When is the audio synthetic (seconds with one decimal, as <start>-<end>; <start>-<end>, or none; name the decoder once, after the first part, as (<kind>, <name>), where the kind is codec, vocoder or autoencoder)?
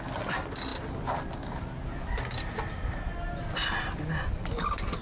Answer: none